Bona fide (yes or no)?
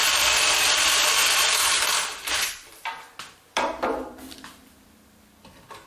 no